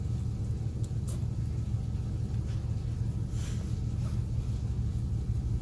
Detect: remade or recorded recorded